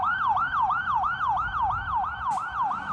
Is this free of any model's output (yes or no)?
yes